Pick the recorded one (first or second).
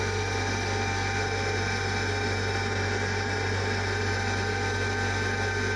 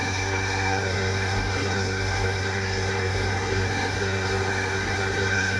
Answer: first